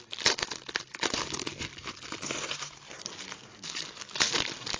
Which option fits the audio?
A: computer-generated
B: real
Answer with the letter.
B